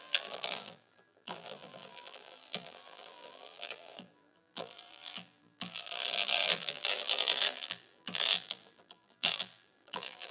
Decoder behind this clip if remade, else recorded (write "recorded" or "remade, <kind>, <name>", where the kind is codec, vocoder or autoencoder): remade, vocoder, BigVGAN v2